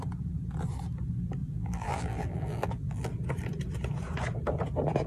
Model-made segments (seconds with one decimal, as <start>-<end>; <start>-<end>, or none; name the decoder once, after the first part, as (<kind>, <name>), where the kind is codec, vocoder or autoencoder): 1.4-3.1 (vocoder, BigVGAN v2)